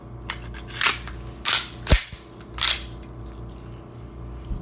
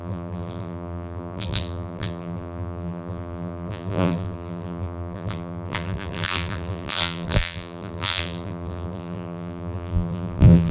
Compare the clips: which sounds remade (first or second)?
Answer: second